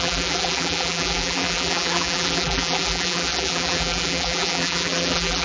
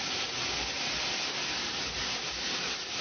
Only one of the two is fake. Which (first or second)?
first